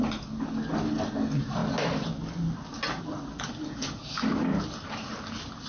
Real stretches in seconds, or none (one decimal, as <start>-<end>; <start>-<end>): 0.0-5.7